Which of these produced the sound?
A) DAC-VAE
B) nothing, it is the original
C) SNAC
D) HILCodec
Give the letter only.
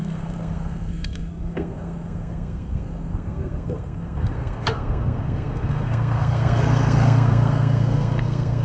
C